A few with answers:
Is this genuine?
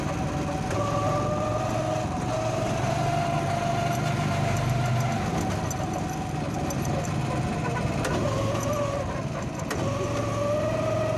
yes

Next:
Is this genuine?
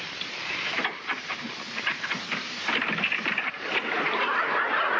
no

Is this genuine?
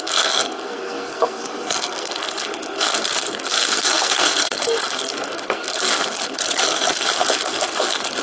no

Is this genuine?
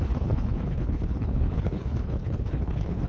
no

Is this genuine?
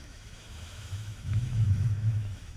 no